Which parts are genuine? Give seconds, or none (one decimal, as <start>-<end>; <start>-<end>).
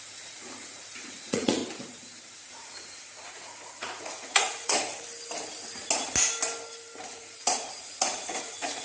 1.6-2.5; 4.9-7.1